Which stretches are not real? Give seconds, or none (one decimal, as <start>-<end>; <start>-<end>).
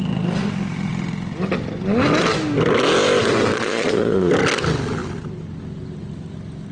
3.5-4.3